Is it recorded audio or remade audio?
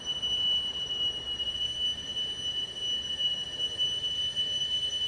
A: recorded